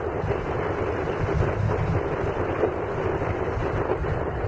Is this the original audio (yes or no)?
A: yes